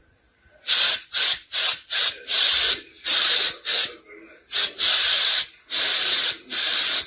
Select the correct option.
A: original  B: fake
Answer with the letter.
A